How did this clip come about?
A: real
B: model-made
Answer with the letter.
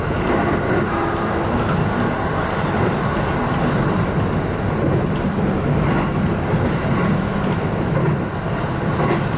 A